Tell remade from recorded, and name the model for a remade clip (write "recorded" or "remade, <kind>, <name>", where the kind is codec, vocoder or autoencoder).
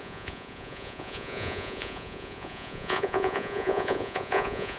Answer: remade, vocoder, Vocos